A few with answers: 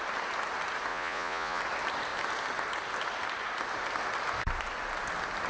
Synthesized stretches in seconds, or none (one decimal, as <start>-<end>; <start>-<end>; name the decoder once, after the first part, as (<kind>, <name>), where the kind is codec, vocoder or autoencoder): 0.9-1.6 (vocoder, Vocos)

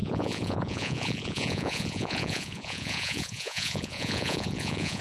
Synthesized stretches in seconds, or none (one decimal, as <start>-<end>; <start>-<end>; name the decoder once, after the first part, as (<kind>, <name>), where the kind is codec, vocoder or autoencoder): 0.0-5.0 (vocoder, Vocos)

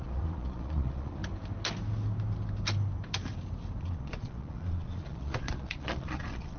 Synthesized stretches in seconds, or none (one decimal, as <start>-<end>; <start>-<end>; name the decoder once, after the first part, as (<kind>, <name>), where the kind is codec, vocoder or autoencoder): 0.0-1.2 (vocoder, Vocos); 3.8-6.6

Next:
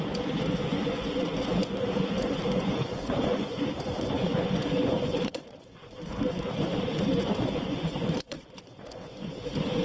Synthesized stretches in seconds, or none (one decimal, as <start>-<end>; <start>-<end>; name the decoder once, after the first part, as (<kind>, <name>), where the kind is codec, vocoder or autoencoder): 0.0-9.8 (vocoder, Vocos)

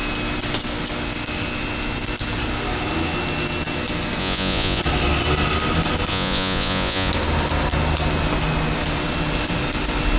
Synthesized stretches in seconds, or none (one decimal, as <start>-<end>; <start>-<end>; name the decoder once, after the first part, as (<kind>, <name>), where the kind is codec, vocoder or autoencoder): 4.2-4.8 (vocoder, Vocos); 6.1-7.1